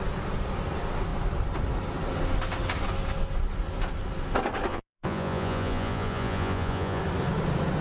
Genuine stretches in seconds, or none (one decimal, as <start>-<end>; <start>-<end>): 0.0-4.7; 7.0-7.8